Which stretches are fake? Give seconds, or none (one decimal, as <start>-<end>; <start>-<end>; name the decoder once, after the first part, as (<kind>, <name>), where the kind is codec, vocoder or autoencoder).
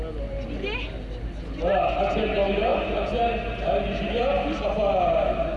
none